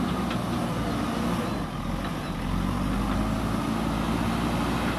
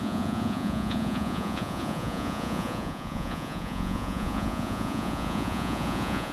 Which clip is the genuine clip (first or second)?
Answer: first